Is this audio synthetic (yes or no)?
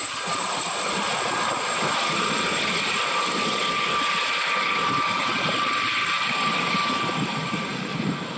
yes